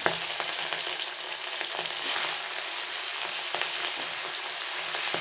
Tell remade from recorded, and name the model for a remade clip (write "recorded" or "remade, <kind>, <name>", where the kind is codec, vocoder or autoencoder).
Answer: recorded